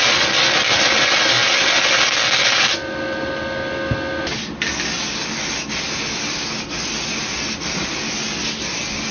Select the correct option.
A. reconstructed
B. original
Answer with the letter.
B